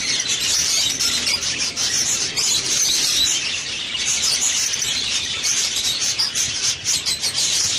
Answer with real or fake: fake